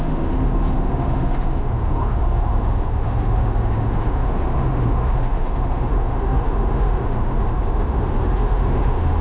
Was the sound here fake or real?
fake